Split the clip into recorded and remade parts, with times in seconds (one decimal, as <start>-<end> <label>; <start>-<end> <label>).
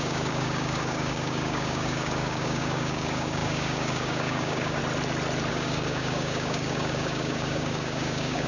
0.0-4.8 remade; 4.8-5.5 recorded; 5.5-8.5 remade